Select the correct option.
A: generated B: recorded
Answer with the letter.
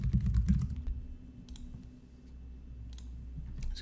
B